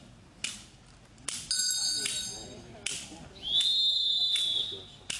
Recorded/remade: recorded